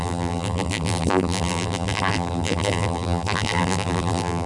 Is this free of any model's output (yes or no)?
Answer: no